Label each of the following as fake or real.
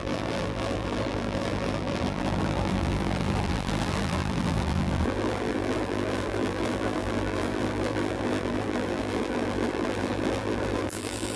fake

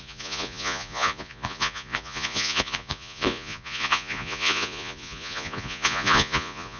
fake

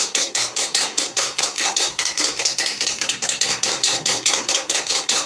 fake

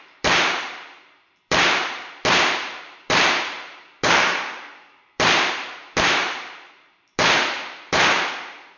fake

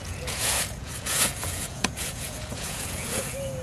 fake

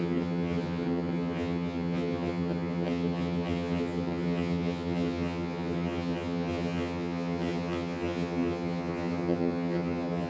fake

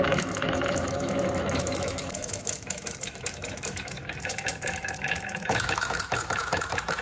fake